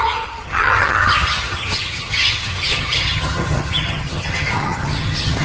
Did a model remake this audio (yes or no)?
yes